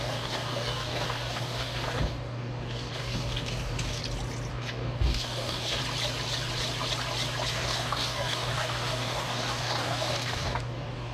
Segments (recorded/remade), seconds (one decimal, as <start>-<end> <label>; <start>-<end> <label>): 0.0-4.0 remade; 4.0-4.5 recorded; 4.5-5.8 remade; 5.8-7.5 recorded; 7.5-11.1 remade